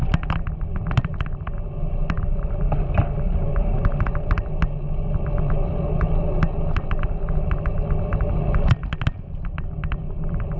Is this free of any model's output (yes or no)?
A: yes